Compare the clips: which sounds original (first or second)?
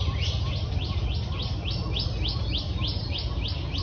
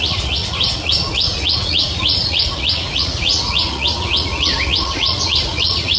first